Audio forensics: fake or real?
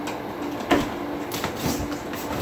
real